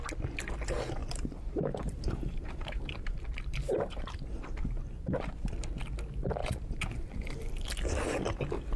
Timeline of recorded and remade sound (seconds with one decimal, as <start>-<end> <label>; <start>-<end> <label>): 0.0-1.0 recorded; 1.0-5.5 remade; 5.5-6.4 recorded; 6.4-7.7 remade; 7.7-8.8 recorded